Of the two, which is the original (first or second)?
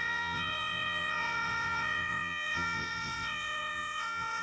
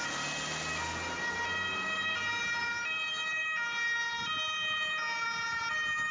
second